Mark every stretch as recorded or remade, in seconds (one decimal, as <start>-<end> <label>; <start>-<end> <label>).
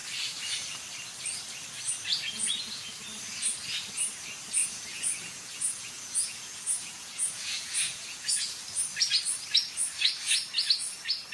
0.0-2.1 recorded; 2.1-2.8 remade; 2.8-4.6 recorded; 4.6-8.6 remade; 8.6-11.3 recorded